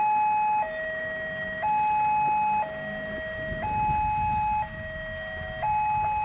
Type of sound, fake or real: real